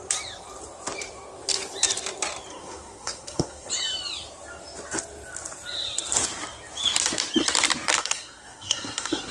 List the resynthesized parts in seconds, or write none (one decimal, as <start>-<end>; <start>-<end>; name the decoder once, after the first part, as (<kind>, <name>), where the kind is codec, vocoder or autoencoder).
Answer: 2.5-3.7 (codec, SNAC); 8.0-9.3